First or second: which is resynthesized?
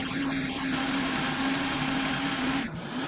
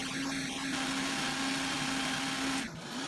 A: first